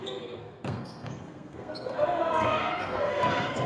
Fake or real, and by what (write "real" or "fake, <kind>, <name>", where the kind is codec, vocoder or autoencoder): fake, codec, SNAC